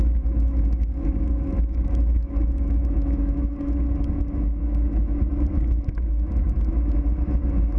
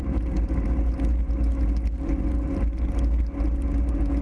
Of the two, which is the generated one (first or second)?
first